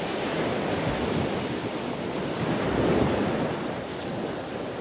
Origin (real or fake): real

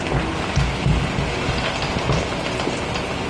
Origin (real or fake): real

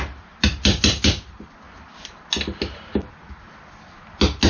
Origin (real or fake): real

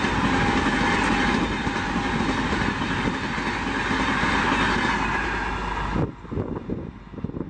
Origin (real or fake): real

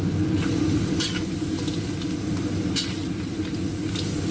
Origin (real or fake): real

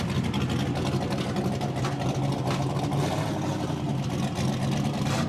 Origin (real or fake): real